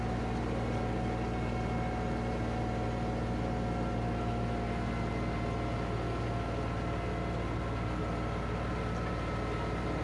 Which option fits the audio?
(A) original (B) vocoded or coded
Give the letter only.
A